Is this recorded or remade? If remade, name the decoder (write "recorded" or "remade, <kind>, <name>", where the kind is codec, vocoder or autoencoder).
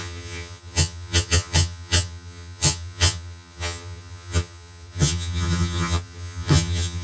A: remade, vocoder, HiFi-GAN